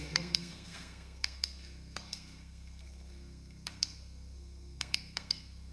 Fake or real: fake